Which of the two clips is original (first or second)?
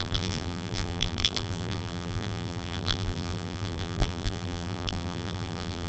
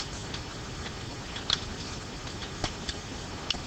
second